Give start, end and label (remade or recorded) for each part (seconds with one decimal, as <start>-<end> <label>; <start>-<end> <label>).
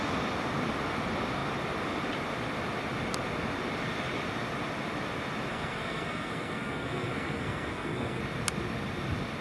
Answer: 0.0-5.5 recorded; 5.5-8.2 remade; 8.2-9.4 recorded